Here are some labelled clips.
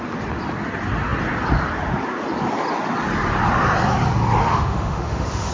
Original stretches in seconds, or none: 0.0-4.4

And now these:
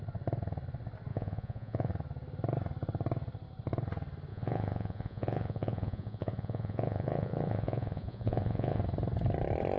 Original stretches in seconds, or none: 0.0-1.1; 1.9-4.3; 8.8-9.8

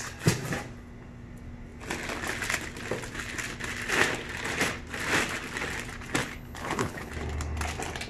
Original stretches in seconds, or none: 0.0-6.2; 7.1-8.1

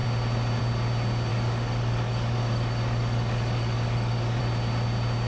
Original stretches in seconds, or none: 0.0-1.3; 4.4-5.3

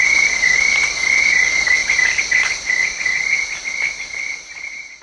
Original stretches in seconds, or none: 0.0-5.0